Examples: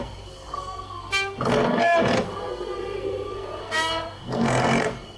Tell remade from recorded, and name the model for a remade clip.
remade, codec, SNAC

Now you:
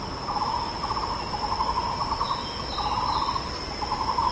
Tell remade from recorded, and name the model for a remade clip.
recorded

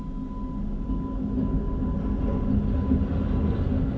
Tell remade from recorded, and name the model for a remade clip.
recorded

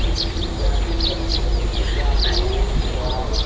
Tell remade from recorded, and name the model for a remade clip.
recorded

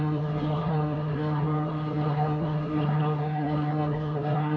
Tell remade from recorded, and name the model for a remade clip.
remade, codec, SNAC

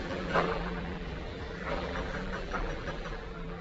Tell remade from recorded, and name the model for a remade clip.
remade, vocoder, BigVGAN v2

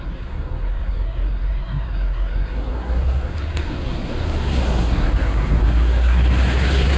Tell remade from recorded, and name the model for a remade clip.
remade, codec, SNAC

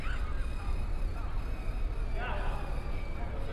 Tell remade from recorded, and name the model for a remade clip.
recorded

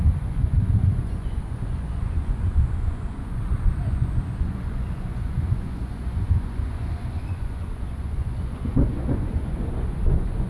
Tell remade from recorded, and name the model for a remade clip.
remade, vocoder, Vocos